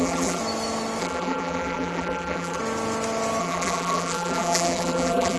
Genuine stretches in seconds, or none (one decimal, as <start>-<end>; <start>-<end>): 0.4-1.0; 2.6-3.4